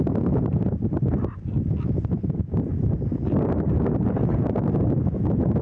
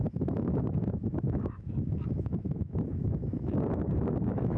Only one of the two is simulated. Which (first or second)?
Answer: second